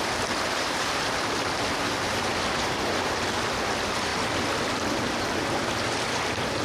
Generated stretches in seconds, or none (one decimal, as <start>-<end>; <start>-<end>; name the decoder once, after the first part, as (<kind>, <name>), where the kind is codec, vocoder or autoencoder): 2.3-2.9 (vocoder, BigVGAN v2)